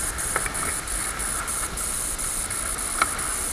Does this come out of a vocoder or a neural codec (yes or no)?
no